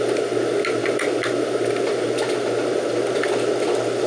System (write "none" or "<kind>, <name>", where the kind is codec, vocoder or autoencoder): none